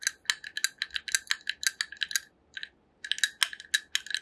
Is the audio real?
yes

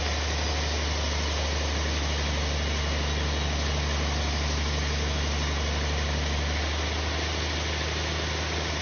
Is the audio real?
yes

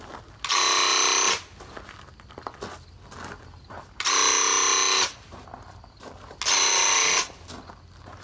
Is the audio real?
yes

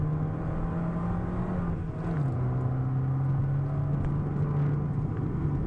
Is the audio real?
yes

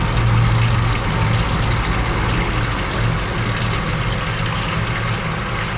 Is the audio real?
yes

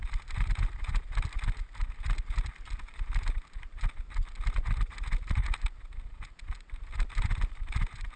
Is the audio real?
yes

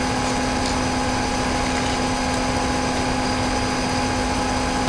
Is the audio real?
yes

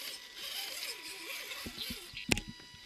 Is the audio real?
yes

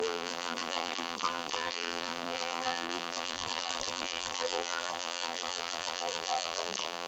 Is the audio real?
no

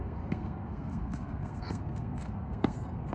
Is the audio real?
no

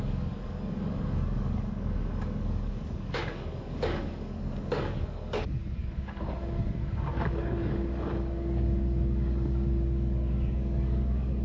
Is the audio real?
no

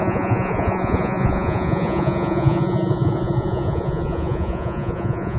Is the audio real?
no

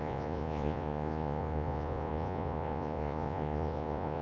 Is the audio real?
no